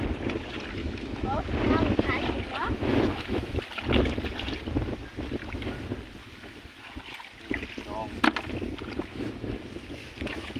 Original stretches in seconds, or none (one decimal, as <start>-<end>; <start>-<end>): 0.0-0.8; 1.4-2.6; 3.6-6.2; 6.9-9.1; 9.6-10.6